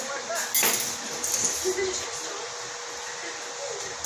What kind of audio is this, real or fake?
real